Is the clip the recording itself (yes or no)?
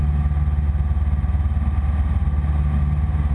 yes